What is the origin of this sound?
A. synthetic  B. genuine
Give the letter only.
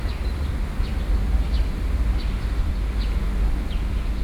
B